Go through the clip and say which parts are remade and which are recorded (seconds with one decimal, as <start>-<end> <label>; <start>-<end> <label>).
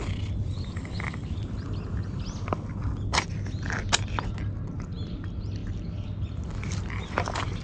0.0-7.6 recorded